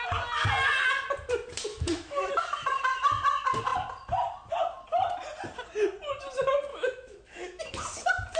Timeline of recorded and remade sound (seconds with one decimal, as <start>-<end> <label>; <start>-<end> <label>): 0.0-1.7 recorded; 1.7-2.3 remade; 2.3-6.7 recorded; 6.7-7.6 remade; 7.6-8.4 recorded